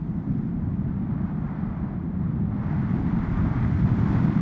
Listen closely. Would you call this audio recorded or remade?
remade